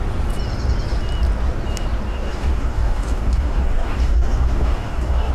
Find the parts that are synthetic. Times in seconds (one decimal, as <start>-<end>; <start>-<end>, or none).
2.1-5.3